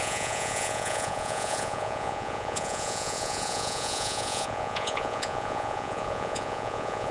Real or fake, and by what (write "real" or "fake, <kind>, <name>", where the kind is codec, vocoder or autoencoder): fake, vocoder, Vocos